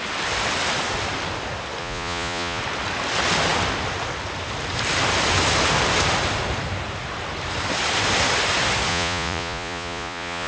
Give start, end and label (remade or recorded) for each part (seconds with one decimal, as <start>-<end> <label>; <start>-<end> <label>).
0.0-1.8 recorded; 1.8-2.6 remade; 2.6-8.9 recorded; 8.9-10.5 remade

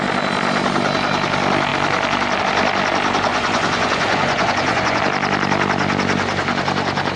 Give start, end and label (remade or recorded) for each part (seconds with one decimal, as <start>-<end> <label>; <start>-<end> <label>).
0.0-3.3 recorded; 3.3-5.0 remade; 5.0-7.2 recorded

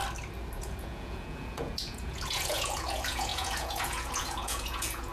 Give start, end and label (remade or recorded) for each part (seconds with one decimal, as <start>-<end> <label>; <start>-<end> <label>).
0.0-0.6 recorded; 0.6-5.1 remade

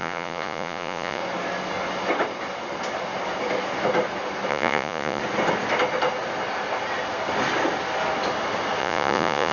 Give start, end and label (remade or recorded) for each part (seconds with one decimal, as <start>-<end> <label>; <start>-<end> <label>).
0.0-1.2 remade; 1.2-4.5 recorded; 4.5-5.2 remade; 5.2-8.8 recorded; 8.8-9.5 remade

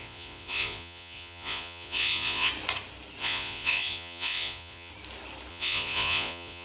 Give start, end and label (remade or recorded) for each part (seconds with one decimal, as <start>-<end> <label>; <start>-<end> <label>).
0.0-2.5 remade; 2.5-3.2 recorded; 3.2-4.9 remade; 4.9-5.5 recorded; 5.5-6.6 remade

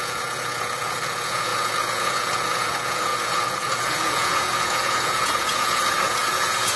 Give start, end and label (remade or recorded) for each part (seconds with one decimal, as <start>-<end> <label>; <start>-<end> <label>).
0.0-6.8 remade

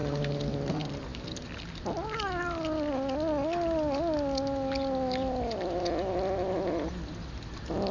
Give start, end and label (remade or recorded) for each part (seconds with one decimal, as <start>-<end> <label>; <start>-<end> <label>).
0.0-7.9 recorded

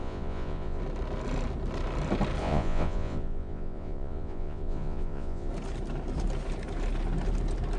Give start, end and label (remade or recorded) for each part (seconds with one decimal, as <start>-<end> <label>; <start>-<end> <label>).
0.0-0.8 remade; 0.8-2.4 recorded; 2.4-5.5 remade; 5.5-7.8 recorded